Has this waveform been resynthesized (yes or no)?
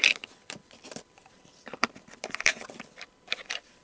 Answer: yes